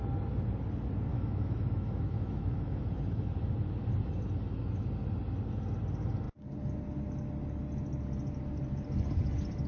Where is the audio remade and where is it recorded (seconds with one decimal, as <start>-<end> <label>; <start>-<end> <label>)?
0.0-1.1 recorded; 1.1-3.3 remade; 3.3-9.7 recorded